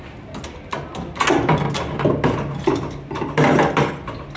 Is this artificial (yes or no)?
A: no